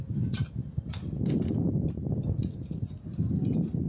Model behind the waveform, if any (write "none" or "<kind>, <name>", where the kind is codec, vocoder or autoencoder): none